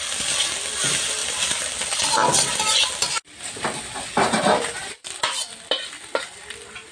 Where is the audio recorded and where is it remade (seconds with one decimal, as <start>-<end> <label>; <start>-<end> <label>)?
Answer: 0.0-6.9 recorded